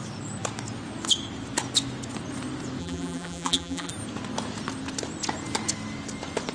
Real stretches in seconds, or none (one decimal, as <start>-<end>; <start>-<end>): 0.0-2.8; 3.9-6.5